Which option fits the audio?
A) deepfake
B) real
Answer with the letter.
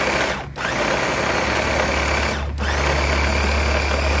B